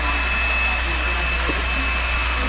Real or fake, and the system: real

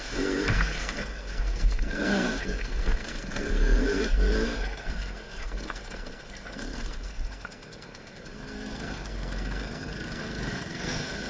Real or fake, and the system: fake, codec, SNAC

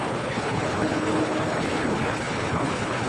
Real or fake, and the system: fake, codec, HILCodec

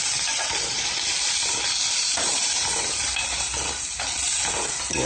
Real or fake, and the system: real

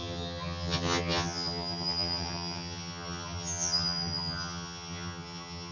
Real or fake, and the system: fake, vocoder, HiFi-GAN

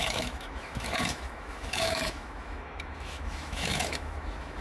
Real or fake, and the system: fake, autoencoder, DAC-VAE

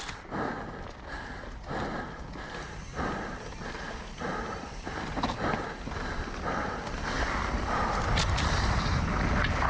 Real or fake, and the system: real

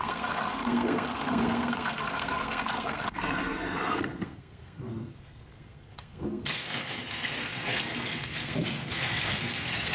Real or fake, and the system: fake, codec, SNAC